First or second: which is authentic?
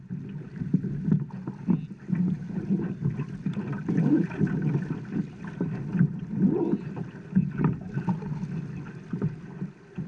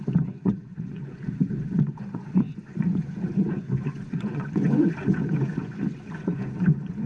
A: first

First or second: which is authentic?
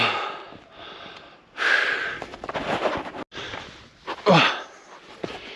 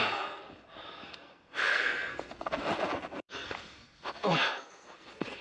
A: first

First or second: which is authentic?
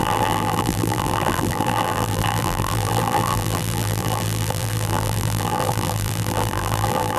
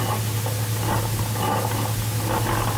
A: second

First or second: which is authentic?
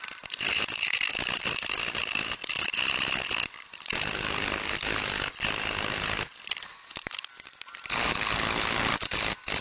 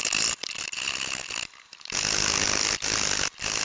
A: second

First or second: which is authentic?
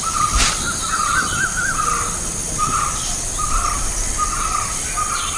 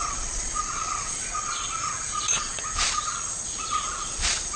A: first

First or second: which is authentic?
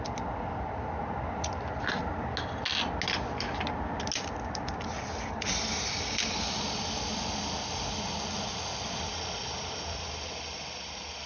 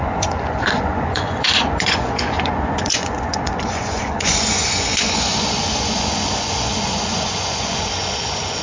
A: first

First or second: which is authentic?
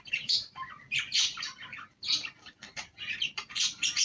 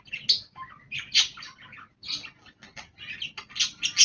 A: second